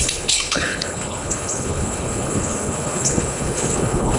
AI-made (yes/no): yes